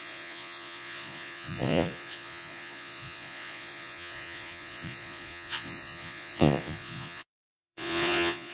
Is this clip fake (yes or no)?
yes